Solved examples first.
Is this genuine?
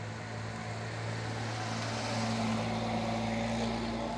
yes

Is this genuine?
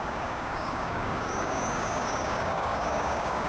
no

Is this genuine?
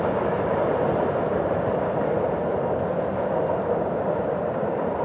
yes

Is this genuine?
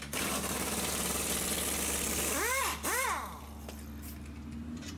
yes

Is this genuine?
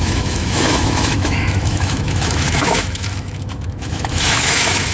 no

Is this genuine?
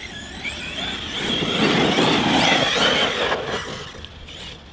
yes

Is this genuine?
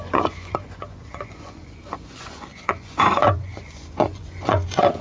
no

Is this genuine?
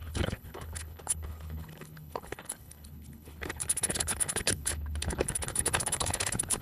no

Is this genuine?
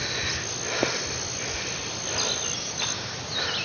yes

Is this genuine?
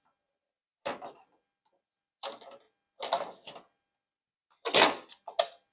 yes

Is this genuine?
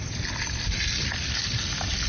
no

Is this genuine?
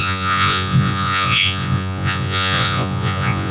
no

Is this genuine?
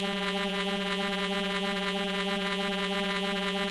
no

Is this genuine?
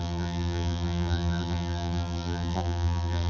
no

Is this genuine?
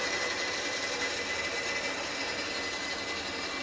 yes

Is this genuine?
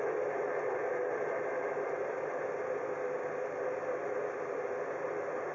yes